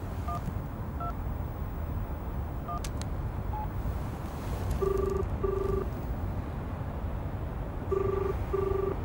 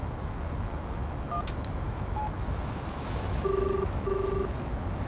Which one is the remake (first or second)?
second